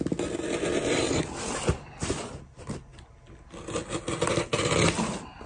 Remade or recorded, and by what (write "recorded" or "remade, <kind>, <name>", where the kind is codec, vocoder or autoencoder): recorded